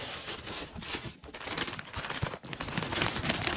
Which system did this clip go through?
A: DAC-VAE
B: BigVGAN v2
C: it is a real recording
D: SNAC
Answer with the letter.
C